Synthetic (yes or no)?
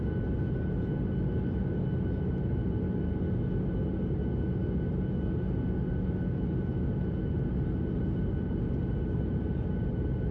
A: no